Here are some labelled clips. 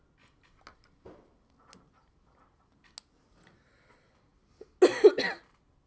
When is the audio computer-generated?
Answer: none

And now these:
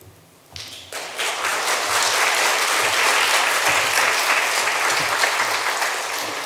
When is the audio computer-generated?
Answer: none

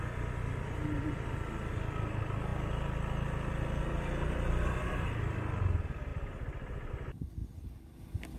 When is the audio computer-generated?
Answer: none

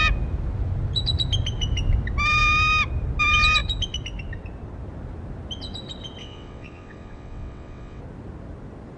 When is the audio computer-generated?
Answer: 6.2-8.0

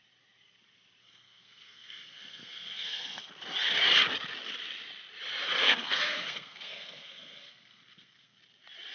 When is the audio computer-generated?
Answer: 1.0-3.3; 5.6-8.4

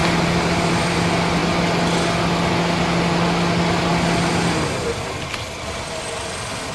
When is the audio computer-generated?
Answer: none

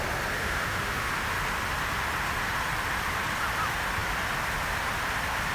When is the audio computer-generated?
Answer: 0.4-1.1

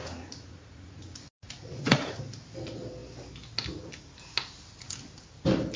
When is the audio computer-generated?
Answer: 0.0-2.2